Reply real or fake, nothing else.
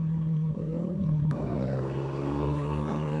fake